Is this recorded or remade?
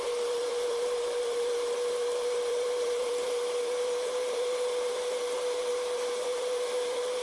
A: remade